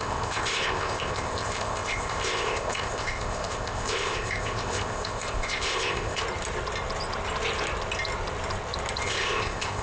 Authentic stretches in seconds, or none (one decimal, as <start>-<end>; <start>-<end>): 6.2-9.0